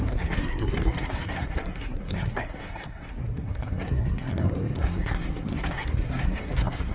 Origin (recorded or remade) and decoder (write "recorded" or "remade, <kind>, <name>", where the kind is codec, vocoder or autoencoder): remade, codec, SNAC